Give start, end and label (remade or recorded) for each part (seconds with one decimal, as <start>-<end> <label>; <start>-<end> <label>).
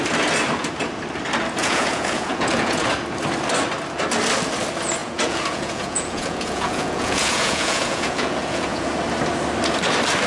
0.0-1.6 recorded; 1.6-2.9 remade; 2.9-5.0 recorded; 5.0-8.9 remade; 8.9-10.3 recorded